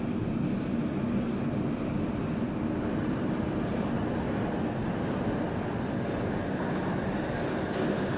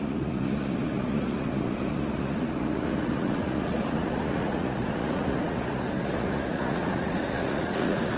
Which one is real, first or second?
first